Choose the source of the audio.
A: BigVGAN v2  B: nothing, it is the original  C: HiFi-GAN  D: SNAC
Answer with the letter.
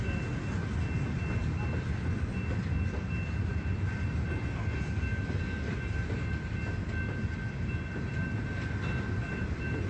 B